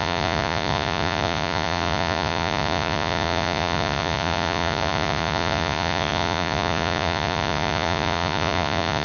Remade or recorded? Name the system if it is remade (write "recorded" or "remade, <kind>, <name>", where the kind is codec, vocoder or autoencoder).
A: remade, vocoder, Vocos